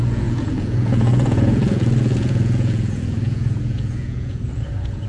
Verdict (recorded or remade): remade